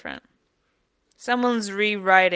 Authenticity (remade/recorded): recorded